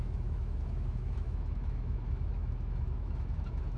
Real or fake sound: fake